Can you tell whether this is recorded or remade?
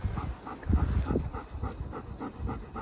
recorded